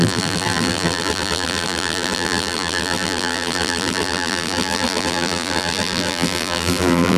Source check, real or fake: fake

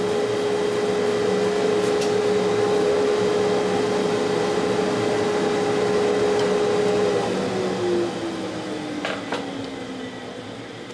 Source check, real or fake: real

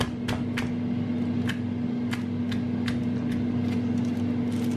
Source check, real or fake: real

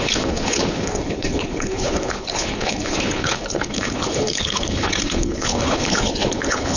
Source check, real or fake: fake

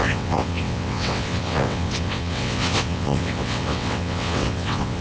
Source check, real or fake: fake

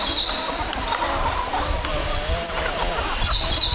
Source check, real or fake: real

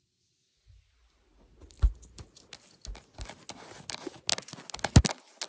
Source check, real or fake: real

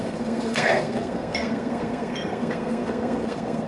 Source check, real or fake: fake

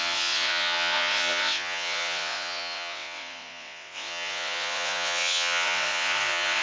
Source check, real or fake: fake